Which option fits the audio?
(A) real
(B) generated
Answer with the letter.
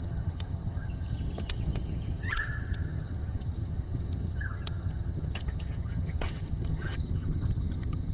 B